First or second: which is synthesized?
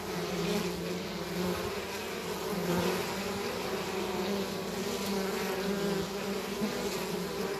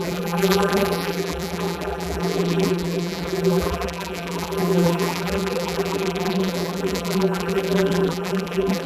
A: second